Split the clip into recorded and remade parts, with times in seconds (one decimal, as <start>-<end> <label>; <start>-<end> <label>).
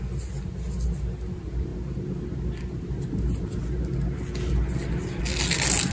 0.0-5.9 recorded